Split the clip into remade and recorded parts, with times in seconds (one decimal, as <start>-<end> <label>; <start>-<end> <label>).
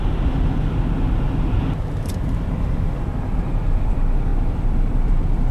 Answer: 0.0-5.5 remade